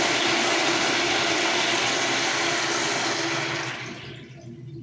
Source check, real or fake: real